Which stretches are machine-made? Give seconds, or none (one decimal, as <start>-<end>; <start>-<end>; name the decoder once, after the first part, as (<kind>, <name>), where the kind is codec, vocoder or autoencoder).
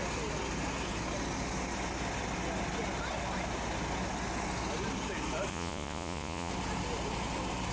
5.5-6.5 (vocoder, Vocos)